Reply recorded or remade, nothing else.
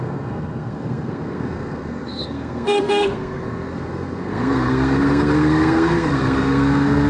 remade